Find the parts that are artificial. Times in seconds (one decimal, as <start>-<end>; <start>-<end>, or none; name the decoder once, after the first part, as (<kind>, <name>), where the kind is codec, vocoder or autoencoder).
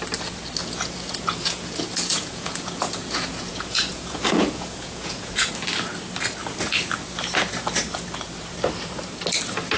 0.6-5.5 (vocoder, Vocos)